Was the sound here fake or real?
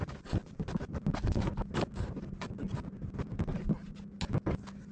real